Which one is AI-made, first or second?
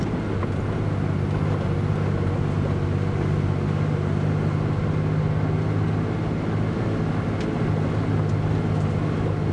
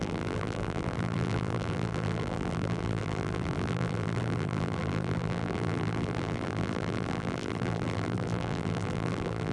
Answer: second